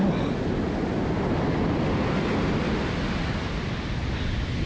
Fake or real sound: real